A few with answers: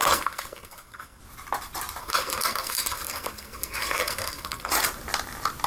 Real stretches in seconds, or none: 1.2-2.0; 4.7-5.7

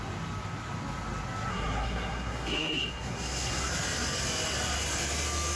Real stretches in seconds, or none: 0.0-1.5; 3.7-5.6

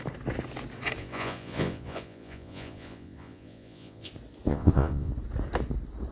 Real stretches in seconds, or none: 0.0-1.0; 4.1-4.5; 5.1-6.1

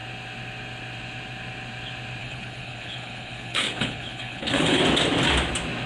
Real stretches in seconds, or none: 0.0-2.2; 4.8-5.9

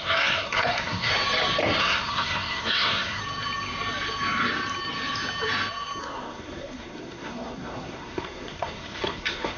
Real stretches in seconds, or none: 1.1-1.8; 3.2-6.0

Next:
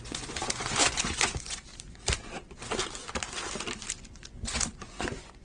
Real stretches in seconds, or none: 1.7-3.9

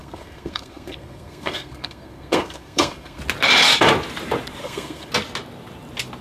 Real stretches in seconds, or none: 3.2-4.6; 5.1-6.2

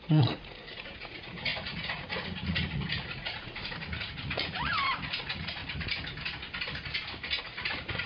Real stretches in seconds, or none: 5.6-7.4